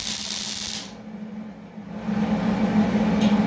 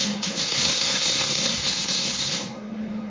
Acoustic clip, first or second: first